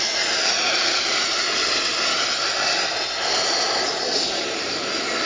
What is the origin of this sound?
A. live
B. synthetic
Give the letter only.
A